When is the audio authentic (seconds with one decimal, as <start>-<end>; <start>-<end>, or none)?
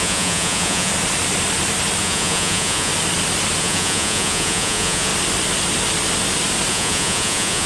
0.9-2.0; 2.9-3.6; 5.1-6.7